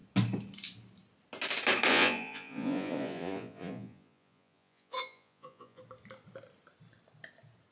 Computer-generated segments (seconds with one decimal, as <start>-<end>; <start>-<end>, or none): 1.9-5.8